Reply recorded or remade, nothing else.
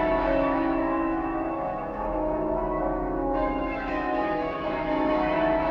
remade